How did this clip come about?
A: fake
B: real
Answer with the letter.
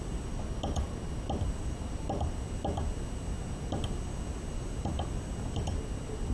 B